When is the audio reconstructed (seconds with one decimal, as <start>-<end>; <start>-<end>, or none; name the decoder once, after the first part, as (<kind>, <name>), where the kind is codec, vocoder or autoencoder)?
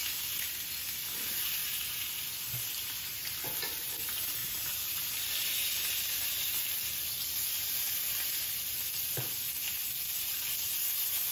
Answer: 1.6-2.2 (vocoder, BigVGAN v2); 4.4-5.1